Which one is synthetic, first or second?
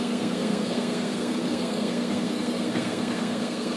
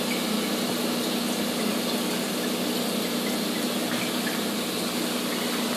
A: first